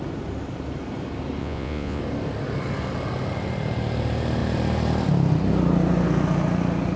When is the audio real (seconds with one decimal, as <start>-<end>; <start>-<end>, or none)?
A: 0.0-1.4; 2.0-7.0